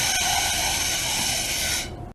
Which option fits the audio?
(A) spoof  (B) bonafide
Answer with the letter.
B